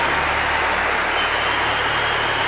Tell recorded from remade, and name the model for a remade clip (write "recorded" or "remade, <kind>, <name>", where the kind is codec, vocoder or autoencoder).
recorded